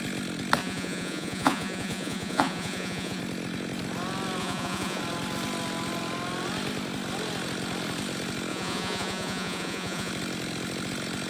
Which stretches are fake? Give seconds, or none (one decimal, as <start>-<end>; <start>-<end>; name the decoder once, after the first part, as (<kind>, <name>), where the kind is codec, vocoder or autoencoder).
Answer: 0.6-3.2 (vocoder, Vocos); 4.4-5.0; 8.5-10.1